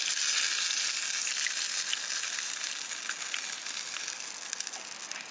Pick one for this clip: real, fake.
real